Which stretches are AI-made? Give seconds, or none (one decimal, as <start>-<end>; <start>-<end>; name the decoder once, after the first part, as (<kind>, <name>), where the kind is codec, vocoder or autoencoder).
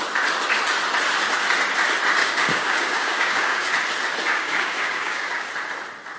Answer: 2.2-3.7 (codec, DAC); 4.3-5.5